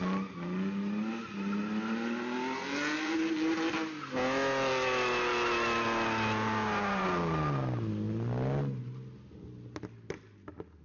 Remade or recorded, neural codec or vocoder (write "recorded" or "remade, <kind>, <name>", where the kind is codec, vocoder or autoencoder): recorded